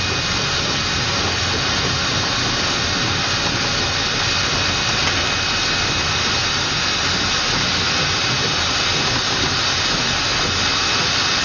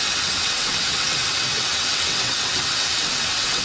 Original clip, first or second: first